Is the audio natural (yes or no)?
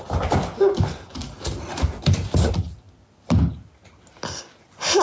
yes